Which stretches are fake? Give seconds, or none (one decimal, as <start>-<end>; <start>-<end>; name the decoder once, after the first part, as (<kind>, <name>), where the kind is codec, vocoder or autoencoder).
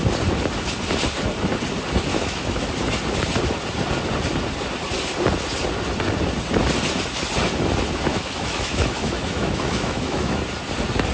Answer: 2.1-2.7 (autoencoder, DAC-VAE); 8.1-10.4